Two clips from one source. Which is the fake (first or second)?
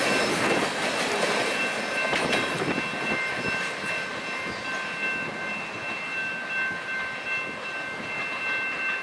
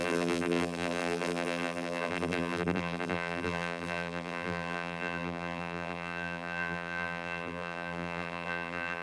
second